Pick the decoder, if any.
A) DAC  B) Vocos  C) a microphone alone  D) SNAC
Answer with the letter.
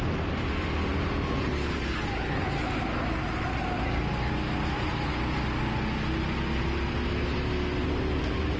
C